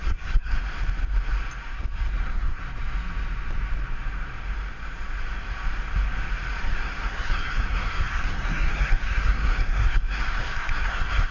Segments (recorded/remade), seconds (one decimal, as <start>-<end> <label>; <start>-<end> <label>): 0.0-0.6 remade; 0.6-2.2 recorded; 2.2-2.6 remade; 2.6-6.6 recorded; 6.6-11.3 remade